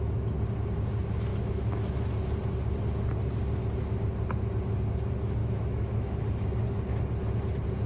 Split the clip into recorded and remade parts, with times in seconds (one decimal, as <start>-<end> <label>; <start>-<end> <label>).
0.0-1.3 recorded; 1.3-2.1 remade; 2.1-5.4 recorded; 5.4-6.2 remade; 6.2-7.9 recorded

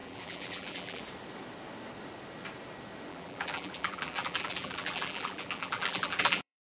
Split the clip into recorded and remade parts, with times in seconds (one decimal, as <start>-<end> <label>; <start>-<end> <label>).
0.0-1.0 remade; 1.0-3.1 recorded; 3.1-6.8 remade

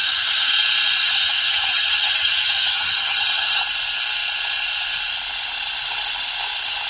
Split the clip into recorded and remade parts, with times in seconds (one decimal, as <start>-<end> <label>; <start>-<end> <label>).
0.0-0.5 remade; 0.5-1.0 recorded; 1.0-3.6 remade; 3.6-6.9 recorded

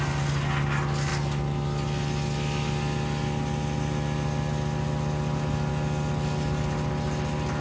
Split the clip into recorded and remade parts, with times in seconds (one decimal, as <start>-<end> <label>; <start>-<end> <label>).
0.0-7.6 recorded

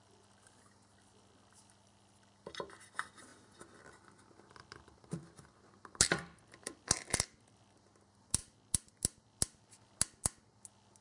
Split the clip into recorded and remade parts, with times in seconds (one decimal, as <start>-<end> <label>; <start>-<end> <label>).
0.0-11.0 recorded

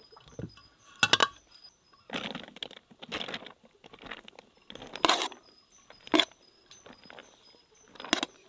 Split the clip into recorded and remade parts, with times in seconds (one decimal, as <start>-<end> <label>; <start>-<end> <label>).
0.0-8.5 recorded